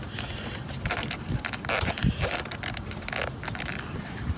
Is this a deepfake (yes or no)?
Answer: no